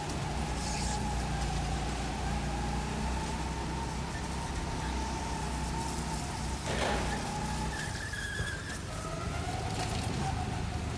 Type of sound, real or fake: real